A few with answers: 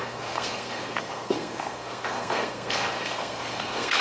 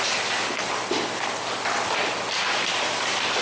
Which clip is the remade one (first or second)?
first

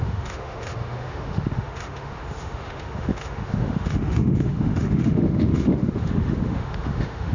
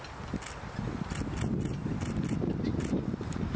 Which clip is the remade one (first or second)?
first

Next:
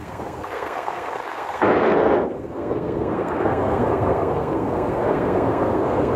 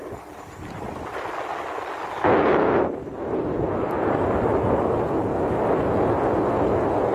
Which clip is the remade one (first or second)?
first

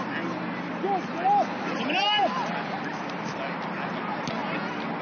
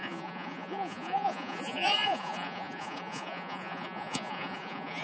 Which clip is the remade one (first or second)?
second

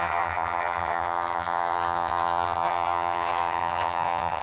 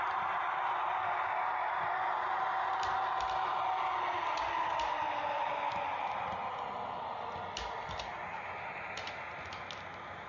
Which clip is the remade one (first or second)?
first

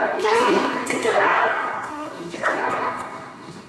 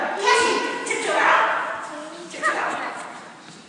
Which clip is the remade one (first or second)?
first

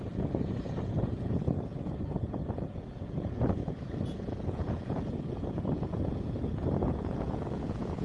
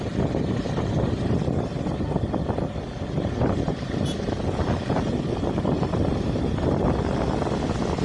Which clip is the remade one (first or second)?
first